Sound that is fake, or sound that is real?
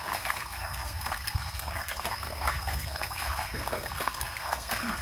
fake